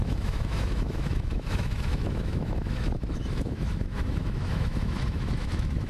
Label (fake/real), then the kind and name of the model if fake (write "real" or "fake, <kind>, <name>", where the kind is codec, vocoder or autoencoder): fake, autoencoder, DAC-VAE